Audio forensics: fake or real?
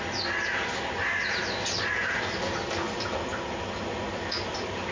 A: real